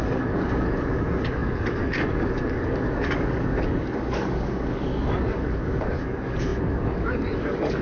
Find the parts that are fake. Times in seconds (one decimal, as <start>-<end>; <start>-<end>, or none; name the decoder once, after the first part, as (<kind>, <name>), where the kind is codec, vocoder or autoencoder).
0.0-7.8 (codec, DAC)

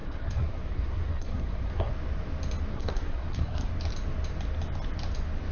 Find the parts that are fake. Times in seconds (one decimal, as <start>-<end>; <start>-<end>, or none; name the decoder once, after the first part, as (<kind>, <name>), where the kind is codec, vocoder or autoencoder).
0.0-1.9 (codec, SNAC); 2.7-3.7

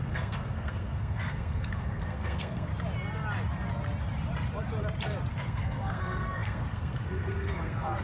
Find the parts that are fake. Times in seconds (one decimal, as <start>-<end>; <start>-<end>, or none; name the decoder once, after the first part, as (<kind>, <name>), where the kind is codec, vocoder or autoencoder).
0.0-2.7 (codec, SNAC); 5.3-8.0